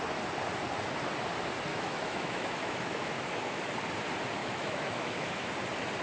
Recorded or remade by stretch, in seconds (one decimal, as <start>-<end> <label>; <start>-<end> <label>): 0.0-1.7 recorded; 1.7-3.6 remade; 3.6-4.4 recorded; 4.4-5.5 remade; 5.5-6.0 recorded